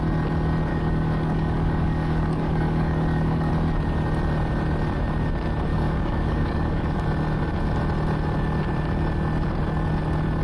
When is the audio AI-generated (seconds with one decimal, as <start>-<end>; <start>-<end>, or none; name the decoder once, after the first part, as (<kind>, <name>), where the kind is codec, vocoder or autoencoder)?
0.7-3.5 (codec, DAC); 5.7-7.0